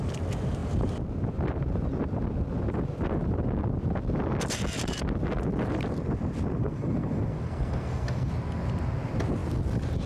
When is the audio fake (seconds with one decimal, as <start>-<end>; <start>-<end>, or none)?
6.6-8.3